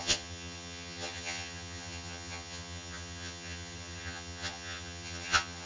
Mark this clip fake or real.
fake